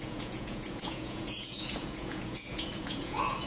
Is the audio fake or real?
fake